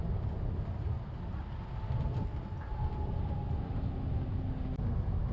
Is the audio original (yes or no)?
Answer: yes